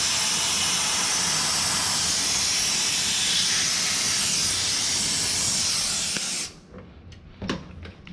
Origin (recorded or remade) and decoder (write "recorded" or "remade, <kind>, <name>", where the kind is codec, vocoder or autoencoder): recorded